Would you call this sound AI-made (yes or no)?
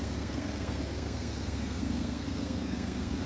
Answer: yes